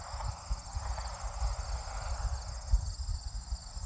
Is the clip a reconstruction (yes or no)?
no